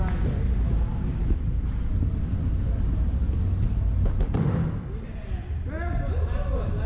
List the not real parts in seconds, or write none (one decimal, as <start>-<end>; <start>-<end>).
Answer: none

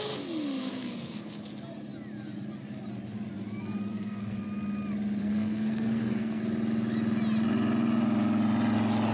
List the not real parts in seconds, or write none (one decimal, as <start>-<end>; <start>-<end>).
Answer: 0.6-1.4; 3.9-4.4; 5.2-6.4